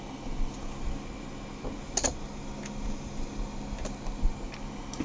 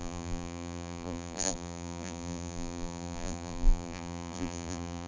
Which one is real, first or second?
first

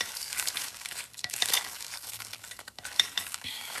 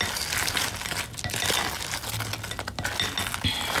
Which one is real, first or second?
second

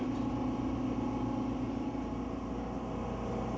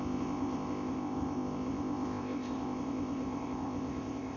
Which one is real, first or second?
first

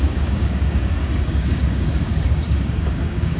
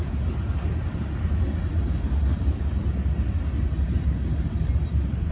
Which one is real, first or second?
second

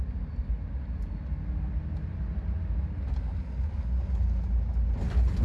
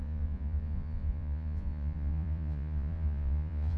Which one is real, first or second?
first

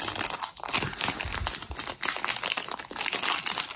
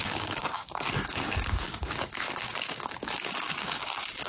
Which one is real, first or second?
first